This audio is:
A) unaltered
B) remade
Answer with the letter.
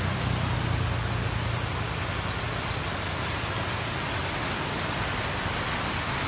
A